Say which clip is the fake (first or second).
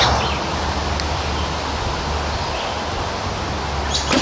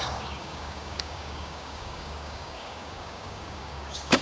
second